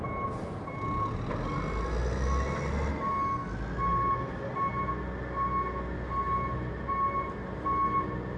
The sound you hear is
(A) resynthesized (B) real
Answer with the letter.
B